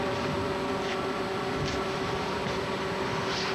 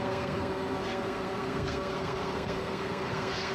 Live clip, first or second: first